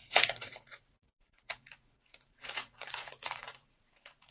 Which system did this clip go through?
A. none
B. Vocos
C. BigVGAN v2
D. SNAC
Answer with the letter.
B